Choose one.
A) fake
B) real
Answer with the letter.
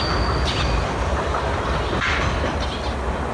B